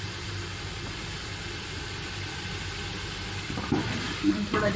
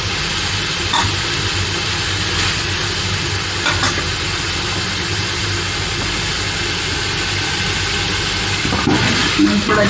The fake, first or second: first